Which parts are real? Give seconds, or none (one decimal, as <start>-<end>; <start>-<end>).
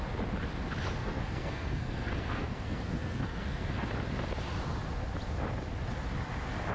0.0-1.0; 3.9-6.7